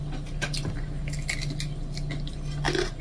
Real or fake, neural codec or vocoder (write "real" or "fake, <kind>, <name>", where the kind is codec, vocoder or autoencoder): real